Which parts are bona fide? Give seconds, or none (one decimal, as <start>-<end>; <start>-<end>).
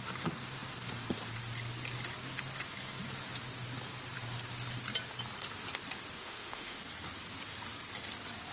0.0-6.2; 6.8-8.5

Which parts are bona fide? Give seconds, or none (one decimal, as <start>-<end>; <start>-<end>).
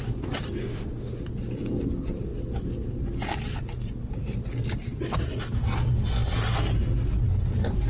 0.0-0.6; 1.2-7.9